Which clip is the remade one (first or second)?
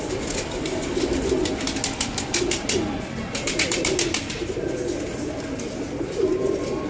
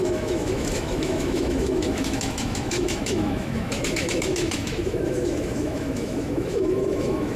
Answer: second